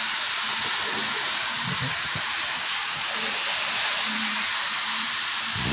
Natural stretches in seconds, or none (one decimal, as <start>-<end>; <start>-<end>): none